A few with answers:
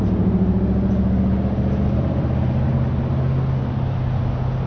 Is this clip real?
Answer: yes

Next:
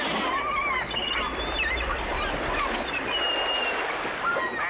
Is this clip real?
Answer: yes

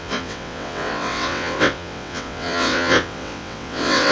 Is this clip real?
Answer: no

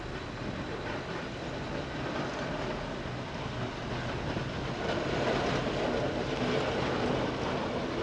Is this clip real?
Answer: yes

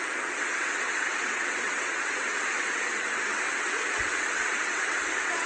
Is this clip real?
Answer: no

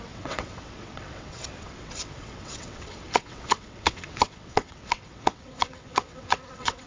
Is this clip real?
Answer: no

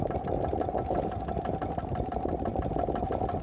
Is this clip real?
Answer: yes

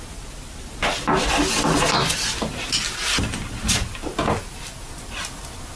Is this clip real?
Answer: yes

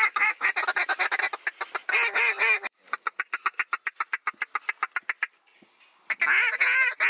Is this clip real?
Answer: yes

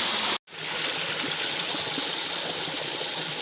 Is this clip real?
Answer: yes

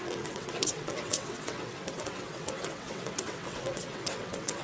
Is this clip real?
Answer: no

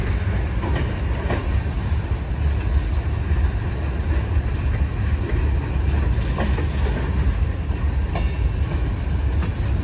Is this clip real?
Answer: yes